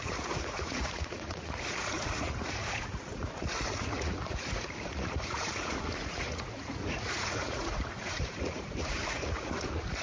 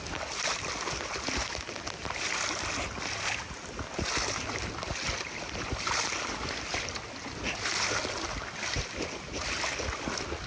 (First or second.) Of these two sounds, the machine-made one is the first